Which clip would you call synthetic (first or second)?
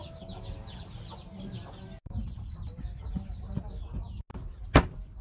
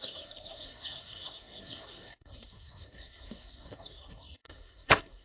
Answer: second